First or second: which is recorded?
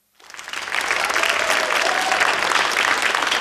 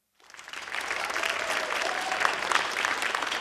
first